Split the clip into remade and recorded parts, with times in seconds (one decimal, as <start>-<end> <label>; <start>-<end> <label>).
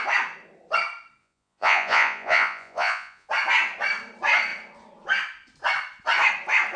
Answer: 0.0-1.2 recorded; 1.2-3.3 remade; 3.3-6.8 recorded